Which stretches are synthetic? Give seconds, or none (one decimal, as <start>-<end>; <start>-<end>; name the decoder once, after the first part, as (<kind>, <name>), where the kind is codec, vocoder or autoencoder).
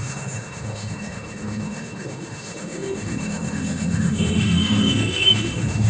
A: 0.0-5.9 (autoencoder, DAC-VAE)